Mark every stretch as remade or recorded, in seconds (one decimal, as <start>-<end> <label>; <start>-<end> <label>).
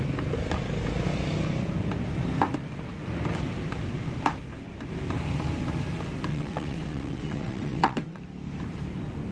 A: 0.0-6.3 recorded; 6.3-8.2 remade; 8.2-9.3 recorded